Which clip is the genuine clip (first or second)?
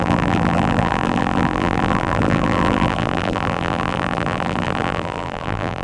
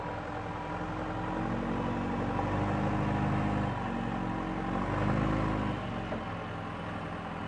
second